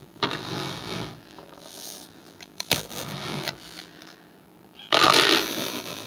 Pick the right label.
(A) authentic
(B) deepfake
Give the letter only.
B